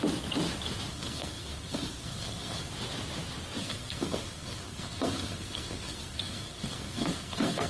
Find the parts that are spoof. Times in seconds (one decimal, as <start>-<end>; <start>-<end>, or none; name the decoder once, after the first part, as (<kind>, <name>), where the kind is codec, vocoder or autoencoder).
0.9-2.7 (codec, SNAC); 3.6-7.7